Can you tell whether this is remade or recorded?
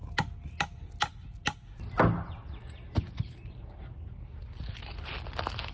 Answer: recorded